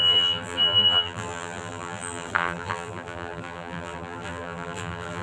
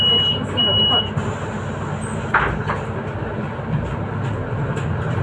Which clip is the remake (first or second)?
first